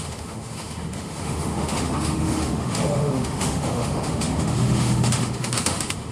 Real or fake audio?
fake